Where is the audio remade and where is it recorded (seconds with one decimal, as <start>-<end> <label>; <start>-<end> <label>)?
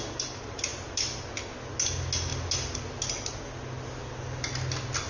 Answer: 0.0-5.1 recorded